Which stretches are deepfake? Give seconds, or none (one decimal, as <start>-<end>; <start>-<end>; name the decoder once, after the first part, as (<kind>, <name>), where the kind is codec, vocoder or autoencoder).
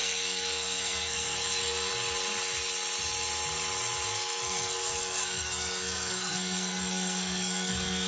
0.0-1.9 (codec, SNAC); 4.1-8.1